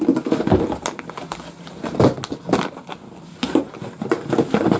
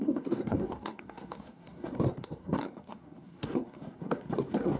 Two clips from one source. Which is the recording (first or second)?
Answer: first